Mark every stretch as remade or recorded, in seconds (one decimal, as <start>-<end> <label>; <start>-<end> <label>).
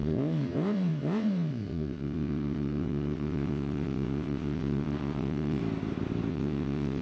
0.0-5.6 remade; 5.6-6.3 recorded; 6.3-7.0 remade